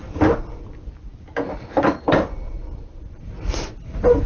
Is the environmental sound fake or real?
real